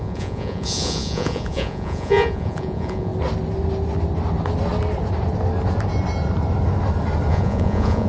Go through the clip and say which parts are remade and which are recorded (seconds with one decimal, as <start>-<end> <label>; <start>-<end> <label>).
0.0-3.1 remade; 3.1-7.3 recorded; 7.3-8.1 remade